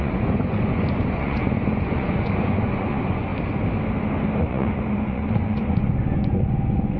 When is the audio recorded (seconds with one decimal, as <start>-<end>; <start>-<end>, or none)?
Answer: 3.3-4.4